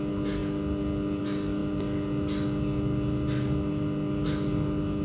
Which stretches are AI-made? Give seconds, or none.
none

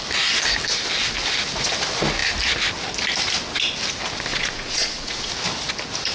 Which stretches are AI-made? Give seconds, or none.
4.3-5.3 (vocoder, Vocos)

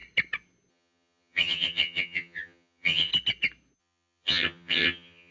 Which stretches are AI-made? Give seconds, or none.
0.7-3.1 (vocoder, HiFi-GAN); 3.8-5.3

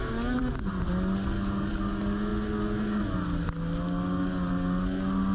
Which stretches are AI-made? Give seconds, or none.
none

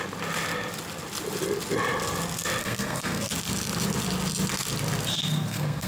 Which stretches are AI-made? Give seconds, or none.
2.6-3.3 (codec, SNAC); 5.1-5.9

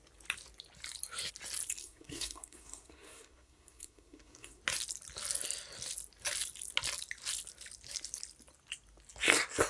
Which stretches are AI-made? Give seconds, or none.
1.8-4.6 (codec, SNAC)

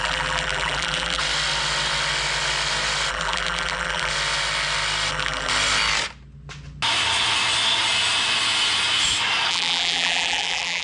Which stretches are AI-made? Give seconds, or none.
0.0-1.2 (vocoder, BigVGAN v2); 3.1-4.1; 5.1-5.5; 9.5-10.8

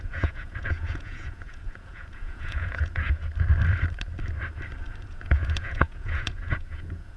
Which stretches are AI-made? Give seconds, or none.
0.0-3.3 (vocoder, Vocos); 5.1-7.2